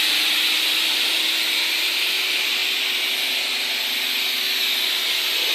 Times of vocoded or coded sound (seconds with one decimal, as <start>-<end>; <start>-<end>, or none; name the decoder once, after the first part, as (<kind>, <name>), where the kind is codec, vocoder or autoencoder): none